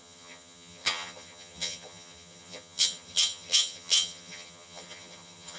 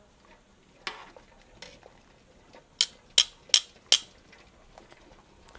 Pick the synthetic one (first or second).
first